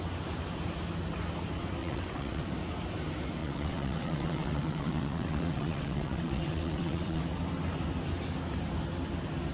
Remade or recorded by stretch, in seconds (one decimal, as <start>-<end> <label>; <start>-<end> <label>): 0.0-1.8 recorded; 1.8-2.5 remade; 2.5-3.4 recorded; 3.4-7.2 remade; 7.2-9.5 recorded